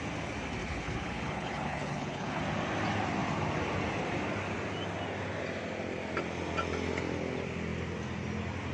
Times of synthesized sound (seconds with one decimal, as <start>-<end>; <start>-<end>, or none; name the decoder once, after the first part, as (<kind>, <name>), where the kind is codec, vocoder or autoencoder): 0.6-2.4 (codec, HILCodec)